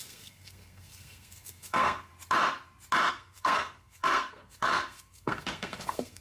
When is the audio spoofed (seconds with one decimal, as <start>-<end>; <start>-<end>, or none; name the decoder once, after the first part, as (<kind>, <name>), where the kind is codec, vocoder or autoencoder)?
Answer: 0.0-2.1 (codec, SNAC); 3.1-6.2